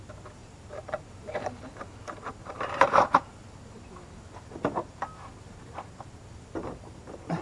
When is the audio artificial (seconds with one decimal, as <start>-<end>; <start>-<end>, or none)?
0.4-1.8; 2.4-3.4; 6.6-7.4

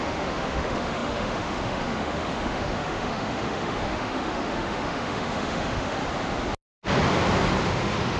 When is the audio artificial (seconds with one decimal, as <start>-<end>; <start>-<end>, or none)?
0.0-6.0; 7.6-8.2

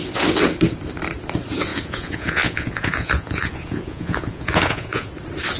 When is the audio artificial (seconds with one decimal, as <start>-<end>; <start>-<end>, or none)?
1.7-5.1

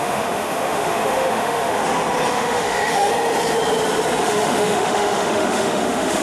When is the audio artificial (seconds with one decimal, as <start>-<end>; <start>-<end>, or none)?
0.0-1.8; 2.3-3.1; 4.2-6.2